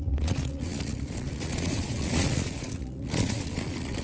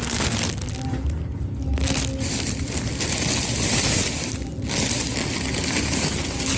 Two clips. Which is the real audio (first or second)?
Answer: second